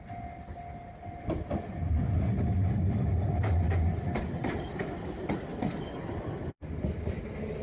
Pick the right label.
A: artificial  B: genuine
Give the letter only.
B